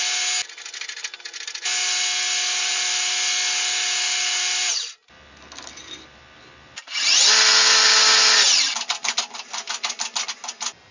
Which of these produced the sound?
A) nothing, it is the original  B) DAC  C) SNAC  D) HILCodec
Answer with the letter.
A